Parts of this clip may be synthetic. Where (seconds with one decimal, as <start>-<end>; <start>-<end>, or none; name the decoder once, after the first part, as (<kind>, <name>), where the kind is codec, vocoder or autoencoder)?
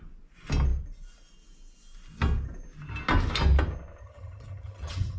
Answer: 4.0-5.2 (vocoder, HiFi-GAN)